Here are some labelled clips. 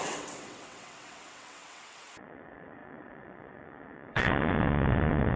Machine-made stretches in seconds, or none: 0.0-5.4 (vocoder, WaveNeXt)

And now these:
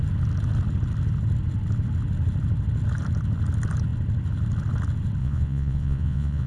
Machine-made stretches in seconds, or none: 5.2-6.5 (vocoder, Vocos)